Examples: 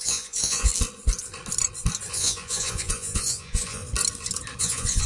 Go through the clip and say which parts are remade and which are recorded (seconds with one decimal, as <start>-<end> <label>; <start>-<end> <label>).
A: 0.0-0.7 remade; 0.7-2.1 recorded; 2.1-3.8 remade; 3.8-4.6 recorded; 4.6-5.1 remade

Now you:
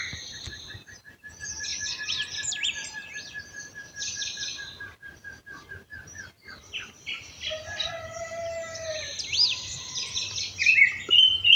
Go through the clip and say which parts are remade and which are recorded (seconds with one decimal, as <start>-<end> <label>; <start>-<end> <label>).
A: 0.0-10.6 remade; 10.6-11.2 recorded; 11.2-11.6 remade

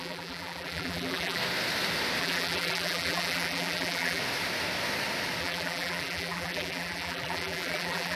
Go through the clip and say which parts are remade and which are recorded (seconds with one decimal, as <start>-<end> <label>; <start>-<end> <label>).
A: 0.0-1.4 remade; 1.4-2.2 recorded; 2.2-4.2 remade; 4.2-5.4 recorded; 5.4-8.2 remade

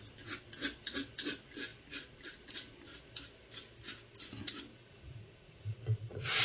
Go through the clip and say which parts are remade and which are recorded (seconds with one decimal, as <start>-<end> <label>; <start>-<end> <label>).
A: 0.0-4.7 recorded; 4.7-6.4 remade

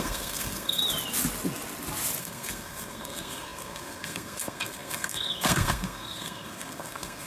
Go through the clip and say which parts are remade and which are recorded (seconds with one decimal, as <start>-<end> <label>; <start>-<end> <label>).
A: 0.0-0.8 remade; 0.8-2.2 recorded; 2.2-7.3 remade

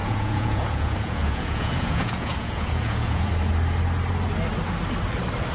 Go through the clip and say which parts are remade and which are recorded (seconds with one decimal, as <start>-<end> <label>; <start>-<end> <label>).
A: 0.0-3.3 remade; 3.3-5.5 recorded

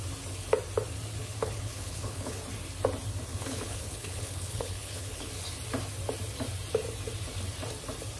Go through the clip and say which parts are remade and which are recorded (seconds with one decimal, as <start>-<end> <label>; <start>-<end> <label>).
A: 0.0-1.2 recorded; 1.2-2.4 remade; 2.4-3.3 recorded; 3.3-5.3 remade; 5.3-8.2 recorded